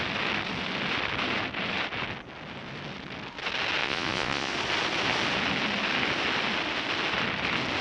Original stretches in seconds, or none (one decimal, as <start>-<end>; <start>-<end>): 0.0-3.8; 4.5-7.8